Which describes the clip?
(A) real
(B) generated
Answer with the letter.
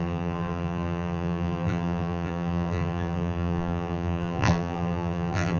B